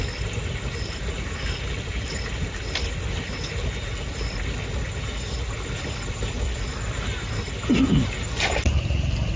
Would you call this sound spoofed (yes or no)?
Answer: no